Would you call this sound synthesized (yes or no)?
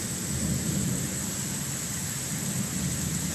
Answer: no